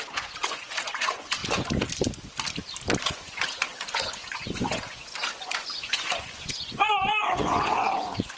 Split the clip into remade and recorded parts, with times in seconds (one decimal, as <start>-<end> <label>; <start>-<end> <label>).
0.0-1.4 remade; 1.4-3.0 recorded; 3.0-8.4 remade

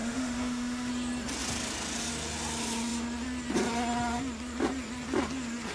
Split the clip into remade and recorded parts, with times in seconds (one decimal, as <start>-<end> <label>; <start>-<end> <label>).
0.0-0.9 remade; 0.9-5.7 recorded

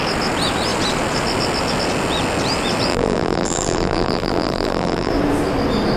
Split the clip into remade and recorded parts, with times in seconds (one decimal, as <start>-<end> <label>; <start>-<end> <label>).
0.0-2.9 recorded; 2.9-5.1 remade; 5.1-6.0 recorded